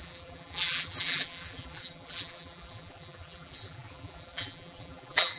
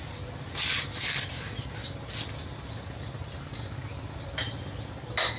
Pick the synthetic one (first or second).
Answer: first